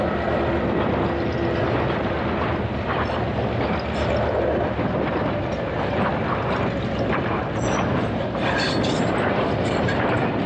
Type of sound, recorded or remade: recorded